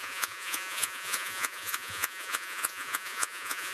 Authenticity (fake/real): fake